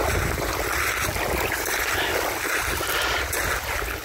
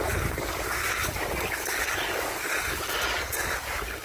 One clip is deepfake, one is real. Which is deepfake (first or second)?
second